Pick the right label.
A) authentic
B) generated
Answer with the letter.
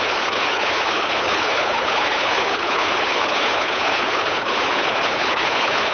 B